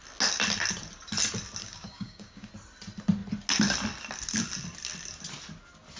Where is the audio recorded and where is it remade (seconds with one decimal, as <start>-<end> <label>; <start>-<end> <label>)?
0.0-1.6 recorded; 1.6-2.5 remade; 2.5-6.0 recorded